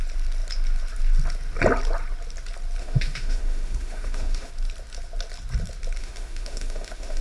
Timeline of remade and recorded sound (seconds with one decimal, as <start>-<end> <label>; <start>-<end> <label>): 0.0-2.8 recorded; 2.8-4.5 remade; 4.5-6.0 recorded; 6.0-7.2 remade